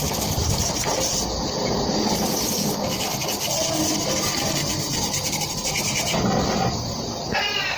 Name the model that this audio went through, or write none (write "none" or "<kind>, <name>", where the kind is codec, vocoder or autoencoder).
none